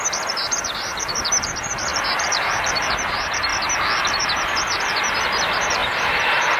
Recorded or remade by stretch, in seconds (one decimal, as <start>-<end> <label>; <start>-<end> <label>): 0.0-3.5 remade; 3.5-4.1 recorded; 4.1-5.8 remade; 5.8-6.6 recorded